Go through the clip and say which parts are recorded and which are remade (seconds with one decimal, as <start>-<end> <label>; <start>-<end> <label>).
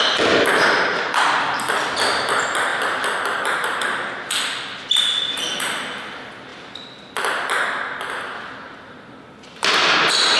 0.0-10.4 recorded